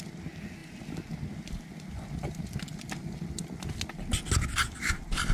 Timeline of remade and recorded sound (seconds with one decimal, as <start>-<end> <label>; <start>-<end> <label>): 0.0-5.3 recorded